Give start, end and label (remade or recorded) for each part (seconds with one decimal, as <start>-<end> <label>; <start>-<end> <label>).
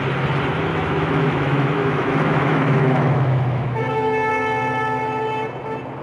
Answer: 0.0-0.7 recorded; 0.7-4.3 remade; 4.3-6.0 recorded